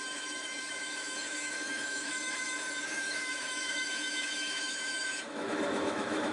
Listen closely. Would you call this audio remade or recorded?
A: remade